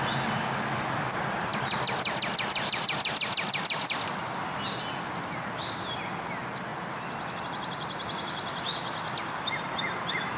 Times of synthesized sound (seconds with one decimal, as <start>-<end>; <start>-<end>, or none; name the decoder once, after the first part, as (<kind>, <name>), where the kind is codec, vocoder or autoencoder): none